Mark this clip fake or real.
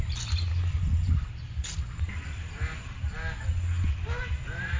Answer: real